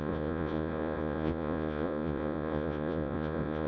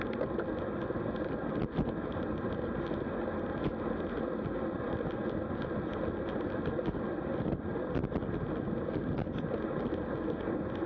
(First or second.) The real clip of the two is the second